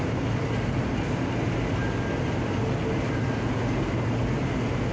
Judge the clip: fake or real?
real